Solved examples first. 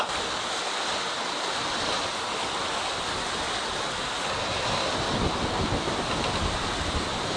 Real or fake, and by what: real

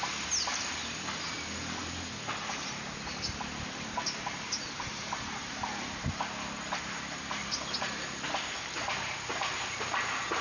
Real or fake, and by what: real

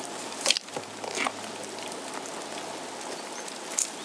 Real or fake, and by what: real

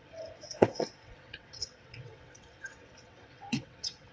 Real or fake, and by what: fake, vocoder, WaveNeXt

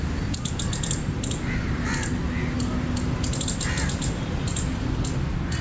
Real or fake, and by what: real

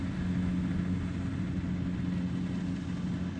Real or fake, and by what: real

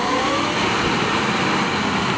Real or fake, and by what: real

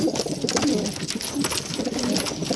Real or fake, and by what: real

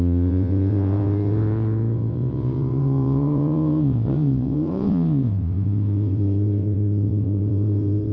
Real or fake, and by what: fake, vocoder, WaveNeXt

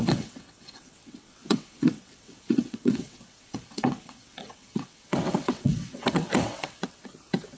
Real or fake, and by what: fake, vocoder, WaveNeXt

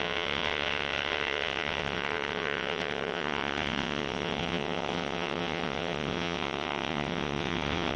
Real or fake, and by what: fake, vocoder, WaveNeXt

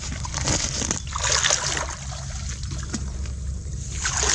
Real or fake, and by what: real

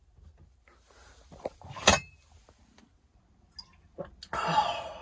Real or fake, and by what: real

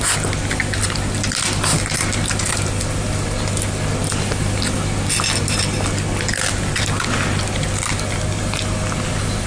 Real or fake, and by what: real